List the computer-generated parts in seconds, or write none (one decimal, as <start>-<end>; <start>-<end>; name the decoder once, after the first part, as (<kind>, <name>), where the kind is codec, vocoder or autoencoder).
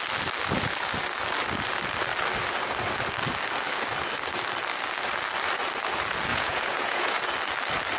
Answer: 6.3-7.2 (vocoder, Vocos)